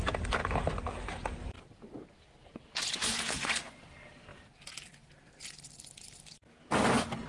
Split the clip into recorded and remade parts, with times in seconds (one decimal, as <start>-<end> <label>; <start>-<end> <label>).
0.0-7.3 recorded